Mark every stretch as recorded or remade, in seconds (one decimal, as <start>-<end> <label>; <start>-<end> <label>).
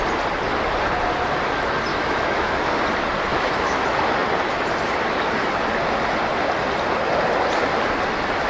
0.0-1.9 recorded; 1.9-2.8 remade; 2.8-3.3 recorded; 3.3-3.8 remade; 3.8-8.5 recorded